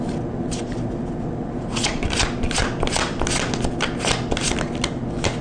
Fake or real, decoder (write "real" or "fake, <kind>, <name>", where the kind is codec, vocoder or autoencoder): real